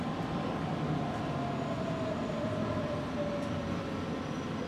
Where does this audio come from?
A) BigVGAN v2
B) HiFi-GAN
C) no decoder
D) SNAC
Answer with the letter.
C